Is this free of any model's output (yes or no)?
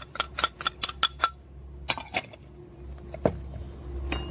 yes